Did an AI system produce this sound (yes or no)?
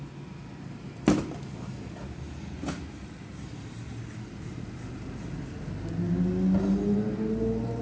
no